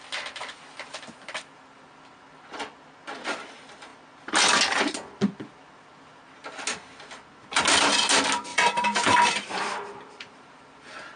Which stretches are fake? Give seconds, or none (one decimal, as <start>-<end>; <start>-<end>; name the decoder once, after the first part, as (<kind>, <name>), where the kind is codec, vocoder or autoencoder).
8.5-10.6 (vocoder, BigVGAN v2)